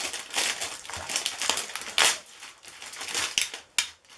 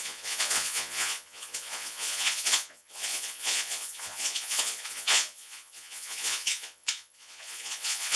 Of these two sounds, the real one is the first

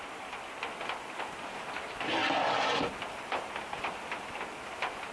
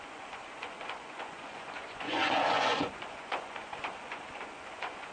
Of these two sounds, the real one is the first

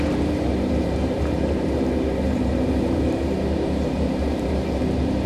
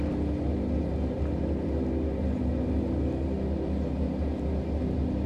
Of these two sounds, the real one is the second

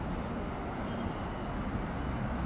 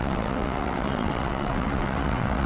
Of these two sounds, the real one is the first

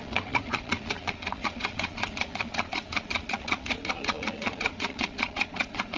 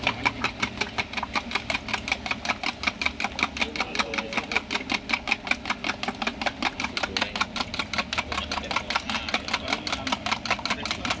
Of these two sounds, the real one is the second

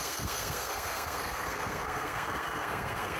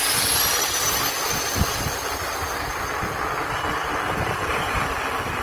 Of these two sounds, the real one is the second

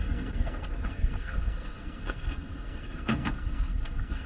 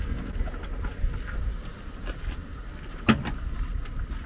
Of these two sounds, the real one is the second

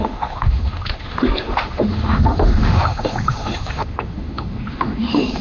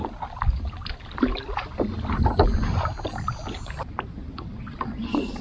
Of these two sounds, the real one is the second